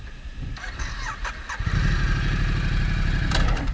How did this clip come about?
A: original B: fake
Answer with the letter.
A